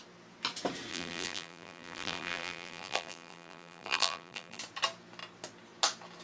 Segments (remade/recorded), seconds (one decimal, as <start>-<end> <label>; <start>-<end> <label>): 0.0-0.9 recorded; 0.9-4.6 remade; 4.6-6.2 recorded